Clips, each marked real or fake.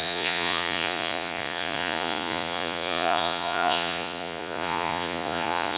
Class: fake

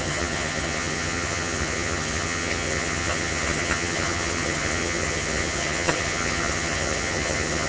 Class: fake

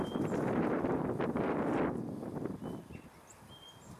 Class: real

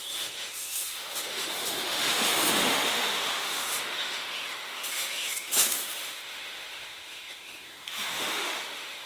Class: fake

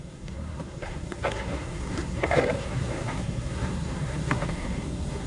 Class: fake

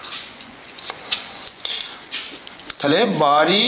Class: fake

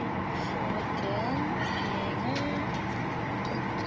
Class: real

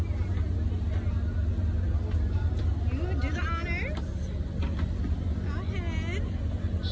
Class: real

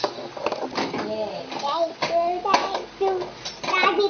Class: real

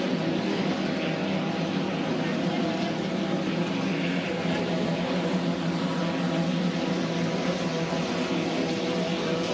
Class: real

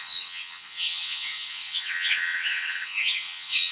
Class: fake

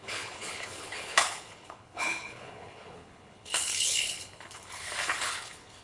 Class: fake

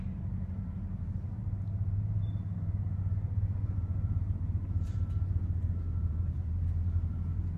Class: fake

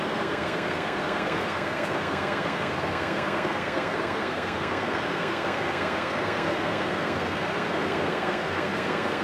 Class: fake